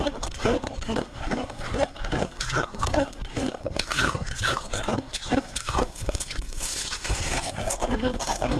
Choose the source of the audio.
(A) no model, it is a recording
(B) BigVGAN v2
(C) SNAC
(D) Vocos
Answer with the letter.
C